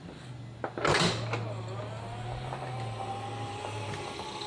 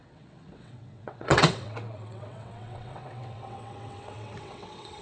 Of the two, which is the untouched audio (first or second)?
first